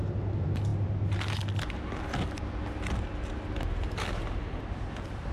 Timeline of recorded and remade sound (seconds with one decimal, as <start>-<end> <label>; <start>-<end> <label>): 0.0-5.3 recorded